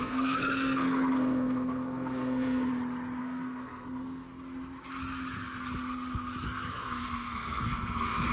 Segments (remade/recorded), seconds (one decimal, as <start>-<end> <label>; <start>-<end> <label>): 0.0-2.7 remade; 2.7-3.2 recorded; 3.2-4.3 remade; 4.3-6.7 recorded; 6.7-8.3 remade